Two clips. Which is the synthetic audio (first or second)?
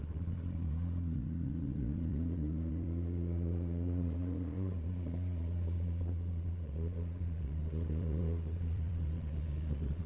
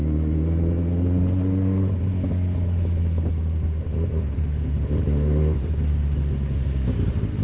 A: first